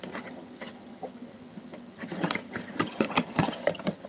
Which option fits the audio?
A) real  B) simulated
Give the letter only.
B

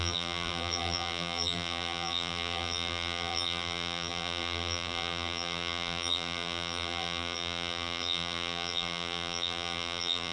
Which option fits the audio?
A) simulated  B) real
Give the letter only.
A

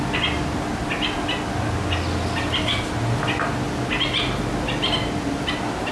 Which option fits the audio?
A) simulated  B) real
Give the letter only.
B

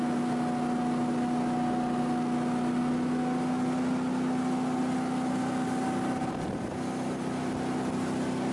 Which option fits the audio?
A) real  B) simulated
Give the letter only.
A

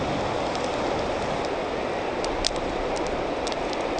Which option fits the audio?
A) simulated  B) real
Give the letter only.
B